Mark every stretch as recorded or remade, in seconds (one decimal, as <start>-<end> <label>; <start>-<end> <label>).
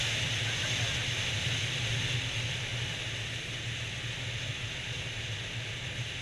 0.0-6.2 recorded